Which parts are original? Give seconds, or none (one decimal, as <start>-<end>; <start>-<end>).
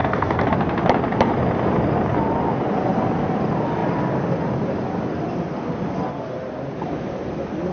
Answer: 0.5-7.7